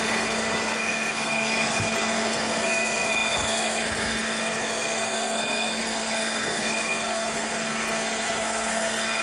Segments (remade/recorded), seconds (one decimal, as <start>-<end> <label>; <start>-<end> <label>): 0.0-9.2 remade